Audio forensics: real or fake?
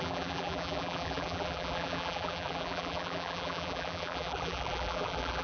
fake